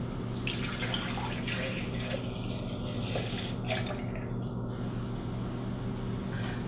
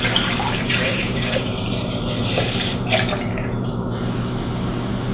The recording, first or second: first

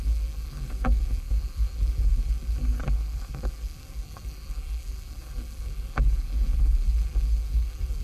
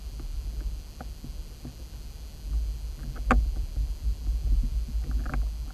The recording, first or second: second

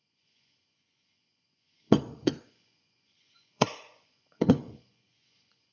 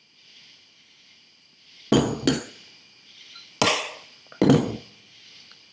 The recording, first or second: second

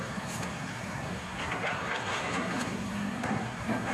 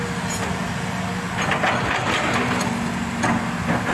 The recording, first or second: second